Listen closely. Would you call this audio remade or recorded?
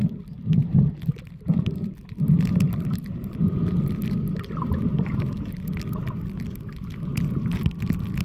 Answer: recorded